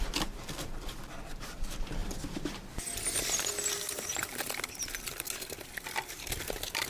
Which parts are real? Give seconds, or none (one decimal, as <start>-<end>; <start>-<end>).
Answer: 2.0-6.1